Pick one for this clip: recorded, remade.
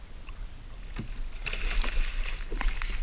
recorded